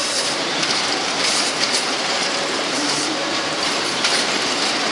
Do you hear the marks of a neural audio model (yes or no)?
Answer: yes